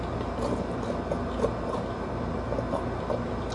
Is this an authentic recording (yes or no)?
yes